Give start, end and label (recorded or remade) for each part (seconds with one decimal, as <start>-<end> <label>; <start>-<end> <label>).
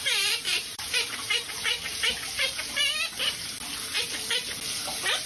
0.0-2.8 remade; 2.8-5.3 recorded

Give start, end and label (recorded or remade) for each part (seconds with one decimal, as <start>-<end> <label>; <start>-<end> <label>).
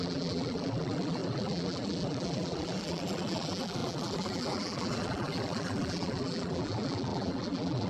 0.0-7.9 remade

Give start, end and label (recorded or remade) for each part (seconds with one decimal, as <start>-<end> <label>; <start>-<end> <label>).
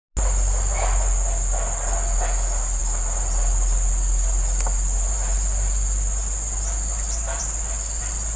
0.0-8.4 recorded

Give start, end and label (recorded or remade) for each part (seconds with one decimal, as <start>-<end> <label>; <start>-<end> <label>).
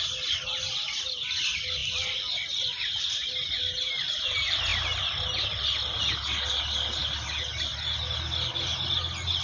0.0-1.8 recorded; 1.8-3.0 remade; 3.0-4.7 recorded; 4.7-6.0 remade; 6.0-7.0 recorded; 7.0-7.7 remade; 7.7-9.4 recorded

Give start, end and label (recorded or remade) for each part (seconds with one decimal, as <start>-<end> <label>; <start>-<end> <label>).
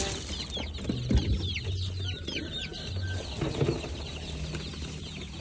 0.0-5.4 recorded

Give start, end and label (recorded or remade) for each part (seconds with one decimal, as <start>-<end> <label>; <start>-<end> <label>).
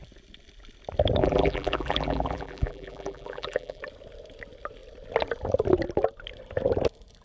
0.0-1.2 recorded; 1.2-3.8 remade; 3.8-7.2 recorded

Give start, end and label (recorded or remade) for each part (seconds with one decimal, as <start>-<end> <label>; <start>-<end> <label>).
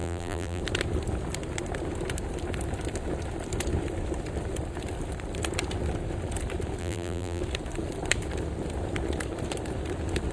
0.0-0.6 remade; 0.6-6.8 recorded; 6.8-7.4 remade; 7.4-10.3 recorded